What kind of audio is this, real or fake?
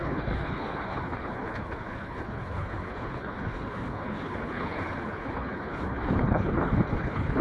fake